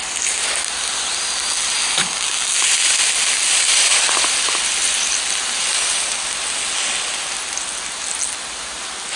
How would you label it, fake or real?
real